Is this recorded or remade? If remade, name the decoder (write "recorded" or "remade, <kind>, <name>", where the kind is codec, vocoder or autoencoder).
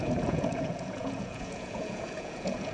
remade, vocoder, Vocos